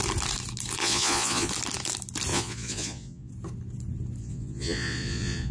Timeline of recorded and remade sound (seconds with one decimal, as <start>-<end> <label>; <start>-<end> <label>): 0.0-0.8 recorded; 0.8-1.5 remade; 1.5-2.3 recorded; 2.3-3.3 remade; 3.3-4.2 recorded; 4.2-5.5 remade